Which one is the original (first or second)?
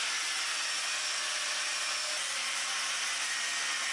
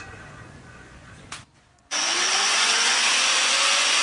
first